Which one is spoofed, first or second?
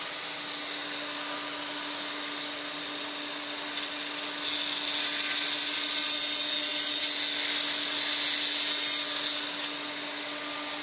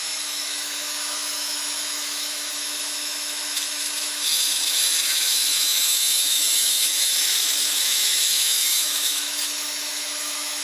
second